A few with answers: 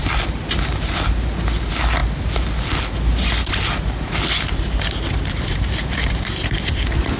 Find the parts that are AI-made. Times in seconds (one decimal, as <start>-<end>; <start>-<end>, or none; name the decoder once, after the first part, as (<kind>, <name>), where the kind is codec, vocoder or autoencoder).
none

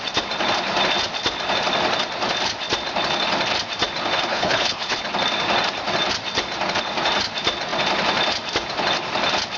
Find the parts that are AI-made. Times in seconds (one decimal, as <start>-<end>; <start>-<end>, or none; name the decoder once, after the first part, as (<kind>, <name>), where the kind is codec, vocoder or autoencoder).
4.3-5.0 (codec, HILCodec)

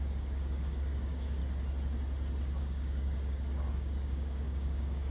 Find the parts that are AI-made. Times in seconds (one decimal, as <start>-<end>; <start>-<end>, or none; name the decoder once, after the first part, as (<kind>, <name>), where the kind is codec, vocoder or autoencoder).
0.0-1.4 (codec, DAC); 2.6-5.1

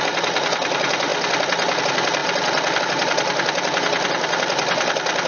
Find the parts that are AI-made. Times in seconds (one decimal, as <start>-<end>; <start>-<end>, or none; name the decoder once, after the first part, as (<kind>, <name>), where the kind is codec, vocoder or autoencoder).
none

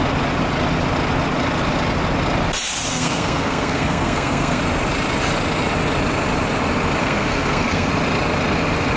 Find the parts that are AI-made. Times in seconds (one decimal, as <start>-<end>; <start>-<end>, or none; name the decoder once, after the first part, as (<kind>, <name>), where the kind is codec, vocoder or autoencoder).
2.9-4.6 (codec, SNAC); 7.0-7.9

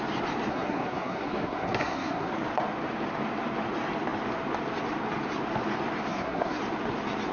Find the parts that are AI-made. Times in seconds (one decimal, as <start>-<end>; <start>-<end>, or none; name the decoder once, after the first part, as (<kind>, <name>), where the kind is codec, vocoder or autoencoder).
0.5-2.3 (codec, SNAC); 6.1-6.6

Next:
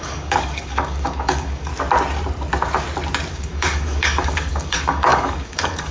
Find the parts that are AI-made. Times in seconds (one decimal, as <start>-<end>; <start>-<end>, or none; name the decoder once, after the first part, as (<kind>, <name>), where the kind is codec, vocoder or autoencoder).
0.0-1.7 (codec, DAC); 3.3-5.9